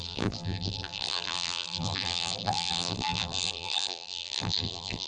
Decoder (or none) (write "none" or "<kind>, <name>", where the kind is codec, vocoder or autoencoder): vocoder, BigVGAN v2